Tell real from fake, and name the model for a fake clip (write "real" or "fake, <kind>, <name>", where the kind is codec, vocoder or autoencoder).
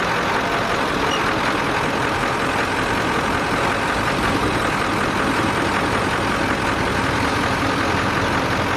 real